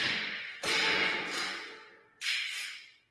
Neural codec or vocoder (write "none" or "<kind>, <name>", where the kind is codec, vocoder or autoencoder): vocoder, Vocos